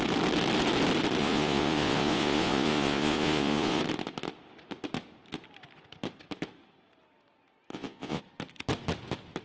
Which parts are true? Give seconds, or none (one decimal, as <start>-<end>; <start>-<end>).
0.0-1.2; 3.8-7.7; 8.2-9.4